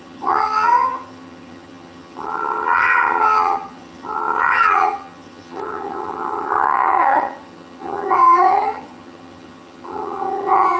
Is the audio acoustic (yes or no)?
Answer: no